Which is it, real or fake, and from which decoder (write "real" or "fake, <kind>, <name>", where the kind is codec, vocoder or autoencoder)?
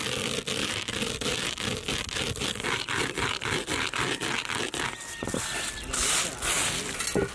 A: real